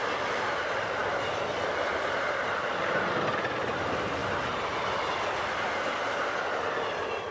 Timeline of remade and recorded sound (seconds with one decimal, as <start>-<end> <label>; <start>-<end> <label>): 0.0-7.3 recorded